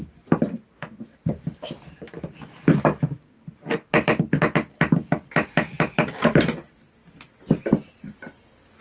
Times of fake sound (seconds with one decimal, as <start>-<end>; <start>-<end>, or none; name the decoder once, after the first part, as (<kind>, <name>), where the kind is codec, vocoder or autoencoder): none